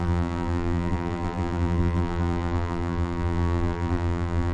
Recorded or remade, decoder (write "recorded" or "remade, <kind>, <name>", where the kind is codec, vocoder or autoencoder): remade, vocoder, BigVGAN v2